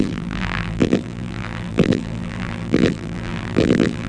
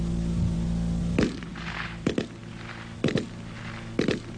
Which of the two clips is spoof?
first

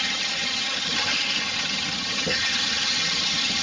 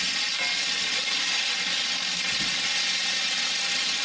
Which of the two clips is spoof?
first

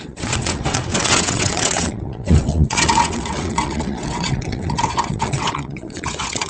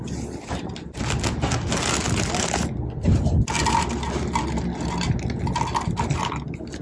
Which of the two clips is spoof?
first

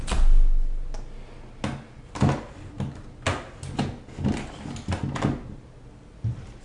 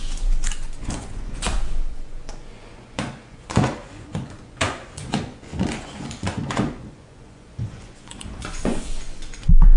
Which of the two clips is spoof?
second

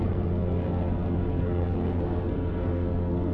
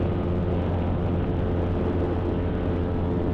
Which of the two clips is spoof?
first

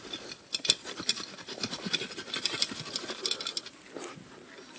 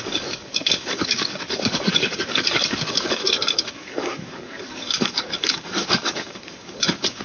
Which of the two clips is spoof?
second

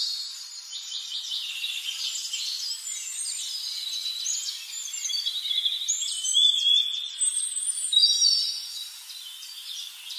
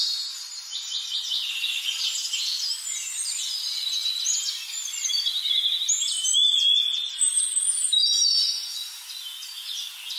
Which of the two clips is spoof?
first